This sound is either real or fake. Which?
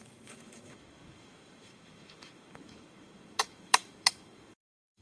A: fake